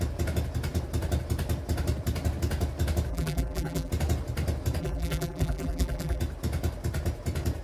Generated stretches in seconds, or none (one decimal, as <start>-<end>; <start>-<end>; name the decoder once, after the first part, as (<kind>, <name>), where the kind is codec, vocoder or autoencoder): 3.1-3.9 (vocoder, BigVGAN v2); 4.8-6.2